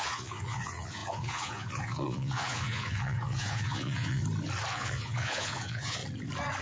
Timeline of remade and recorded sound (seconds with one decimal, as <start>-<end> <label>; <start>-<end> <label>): 0.0-4.2 remade; 4.2-4.7 recorded; 4.7-6.0 remade; 6.0-6.6 recorded